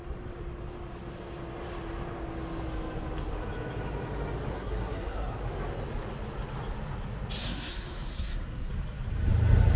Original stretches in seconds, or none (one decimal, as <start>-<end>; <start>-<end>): 0.0-4.5; 5.4-7.4; 8.7-9.8